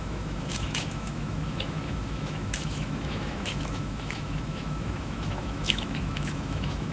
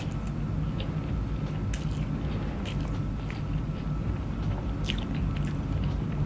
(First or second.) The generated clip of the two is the first